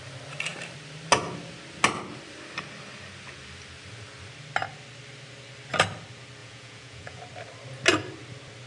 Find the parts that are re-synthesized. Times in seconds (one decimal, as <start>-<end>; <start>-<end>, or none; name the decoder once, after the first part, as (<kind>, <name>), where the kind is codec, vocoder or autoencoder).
6.4-7.2 (vocoder, Vocos)